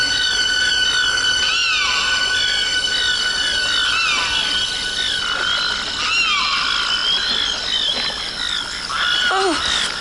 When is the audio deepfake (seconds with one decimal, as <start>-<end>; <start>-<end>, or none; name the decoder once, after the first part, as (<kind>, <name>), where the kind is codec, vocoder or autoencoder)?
none